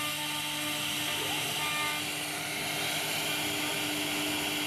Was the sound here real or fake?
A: real